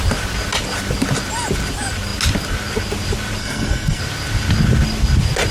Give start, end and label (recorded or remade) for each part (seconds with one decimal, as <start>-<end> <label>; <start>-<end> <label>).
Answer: 0.0-3.4 recorded; 3.4-4.0 remade; 4.0-5.5 recorded